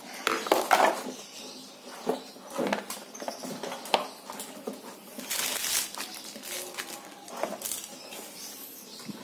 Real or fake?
real